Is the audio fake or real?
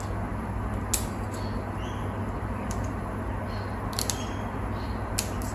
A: real